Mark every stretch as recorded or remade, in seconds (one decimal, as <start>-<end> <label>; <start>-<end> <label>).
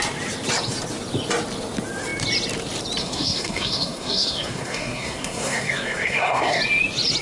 0.0-3.0 recorded; 3.0-6.6 remade; 6.6-7.2 recorded